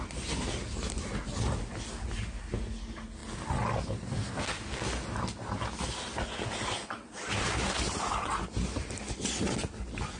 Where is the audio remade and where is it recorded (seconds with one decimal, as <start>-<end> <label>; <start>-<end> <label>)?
0.0-10.2 recorded